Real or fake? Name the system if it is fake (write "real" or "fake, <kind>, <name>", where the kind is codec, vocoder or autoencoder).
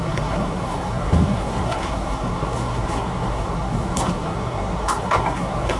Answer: fake, codec, SNAC